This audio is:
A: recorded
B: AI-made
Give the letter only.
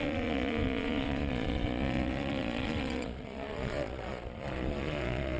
B